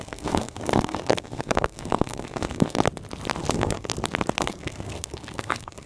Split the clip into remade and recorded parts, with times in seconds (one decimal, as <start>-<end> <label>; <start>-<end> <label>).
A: 0.0-2.8 remade; 2.8-3.5 recorded; 3.5-3.9 remade; 3.9-4.4 recorded; 4.4-5.9 remade